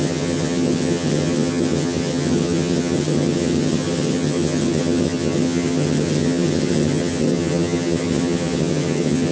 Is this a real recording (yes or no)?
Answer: no